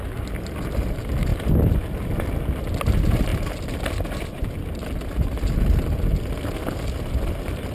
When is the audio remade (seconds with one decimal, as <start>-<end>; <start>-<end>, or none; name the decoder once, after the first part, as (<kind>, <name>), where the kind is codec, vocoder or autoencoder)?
none